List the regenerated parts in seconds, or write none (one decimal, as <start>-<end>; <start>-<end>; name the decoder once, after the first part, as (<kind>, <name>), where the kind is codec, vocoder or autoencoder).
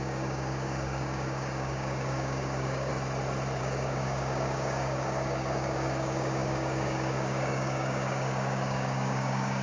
0.0-2.9 (codec, DAC); 3.6-9.6